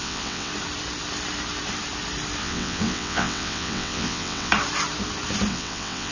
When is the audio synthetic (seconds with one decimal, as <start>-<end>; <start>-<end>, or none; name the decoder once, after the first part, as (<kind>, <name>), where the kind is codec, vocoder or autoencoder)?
0.0-0.5 (vocoder, WaveNeXt); 2.4-4.5; 5.5-6.1